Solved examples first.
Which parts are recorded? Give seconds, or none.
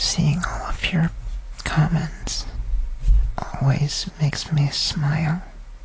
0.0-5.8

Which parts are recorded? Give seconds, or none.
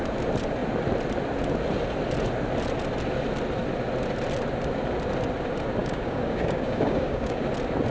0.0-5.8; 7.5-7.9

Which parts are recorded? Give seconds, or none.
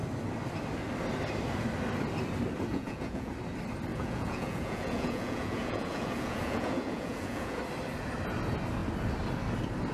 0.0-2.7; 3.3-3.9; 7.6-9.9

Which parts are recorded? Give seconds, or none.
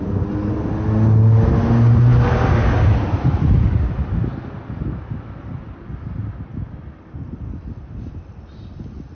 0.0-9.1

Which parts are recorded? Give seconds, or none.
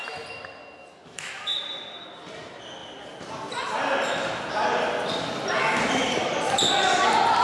0.0-0.9; 1.6-5.6; 6.3-7.4